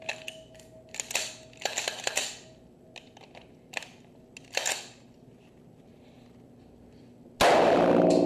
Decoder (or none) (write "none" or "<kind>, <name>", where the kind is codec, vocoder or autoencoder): none